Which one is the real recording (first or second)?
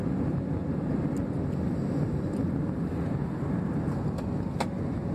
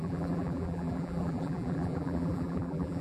first